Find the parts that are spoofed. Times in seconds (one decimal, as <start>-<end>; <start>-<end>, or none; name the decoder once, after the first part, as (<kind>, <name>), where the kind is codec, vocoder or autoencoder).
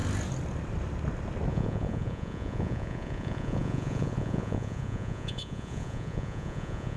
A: 1.5-7.0 (vocoder, Vocos)